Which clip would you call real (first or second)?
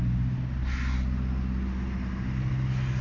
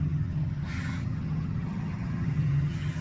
first